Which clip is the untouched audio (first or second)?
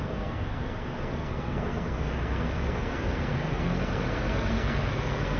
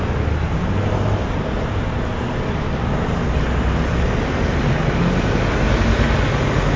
second